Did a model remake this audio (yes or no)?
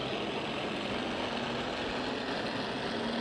no